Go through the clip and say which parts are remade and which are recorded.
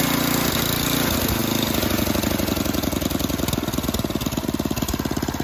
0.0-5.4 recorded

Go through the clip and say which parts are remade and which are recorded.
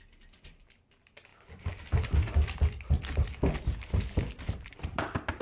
0.0-5.4 recorded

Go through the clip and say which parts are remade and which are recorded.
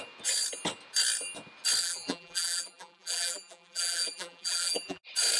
0.0-1.8 recorded; 1.8-5.0 remade; 5.0-5.4 recorded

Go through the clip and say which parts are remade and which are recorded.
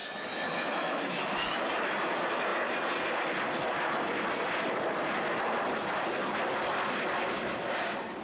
0.0-1.6 remade; 1.6-8.2 recorded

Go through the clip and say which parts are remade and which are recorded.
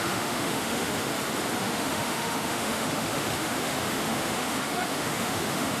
0.0-1.1 remade; 1.1-1.6 recorded; 1.6-5.8 remade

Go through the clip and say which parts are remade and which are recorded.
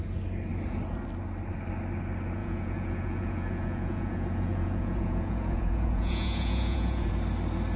0.0-2.4 recorded; 2.4-7.1 remade; 7.1-7.8 recorded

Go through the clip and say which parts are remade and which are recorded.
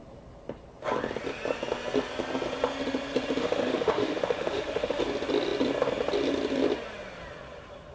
0.0-3.4 recorded; 3.4-5.0 remade; 5.0-7.9 recorded